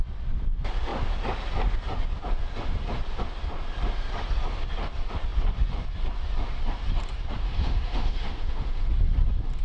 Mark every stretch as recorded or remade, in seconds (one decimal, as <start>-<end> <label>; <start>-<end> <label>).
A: 0.0-7.4 recorded; 7.4-8.9 remade; 8.9-9.6 recorded